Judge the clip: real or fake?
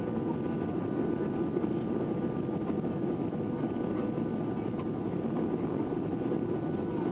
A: real